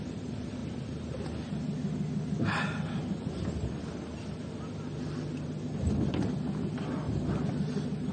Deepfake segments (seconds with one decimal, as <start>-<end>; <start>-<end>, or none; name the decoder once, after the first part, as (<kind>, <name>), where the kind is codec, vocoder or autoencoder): none